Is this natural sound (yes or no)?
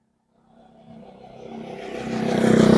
yes